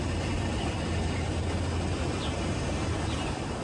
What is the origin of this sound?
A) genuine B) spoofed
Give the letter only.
A